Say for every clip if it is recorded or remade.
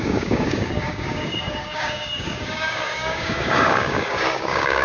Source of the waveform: remade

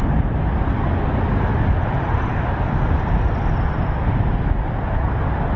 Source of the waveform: recorded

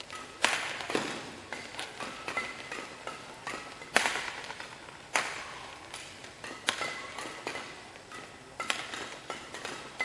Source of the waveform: recorded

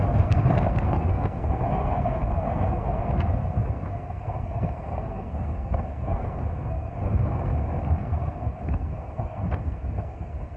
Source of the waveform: remade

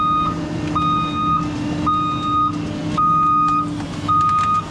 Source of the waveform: recorded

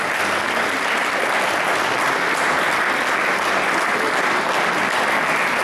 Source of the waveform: recorded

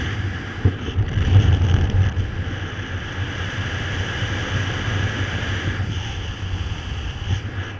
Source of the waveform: recorded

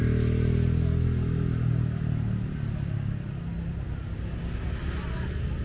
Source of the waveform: recorded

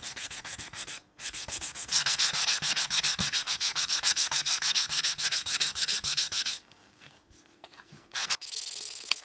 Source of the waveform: remade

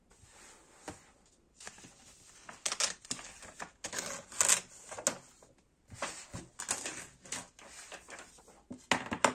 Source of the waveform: recorded